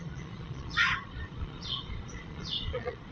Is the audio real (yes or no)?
no